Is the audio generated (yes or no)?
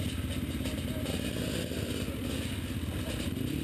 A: no